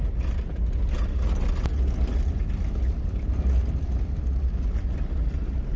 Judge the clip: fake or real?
real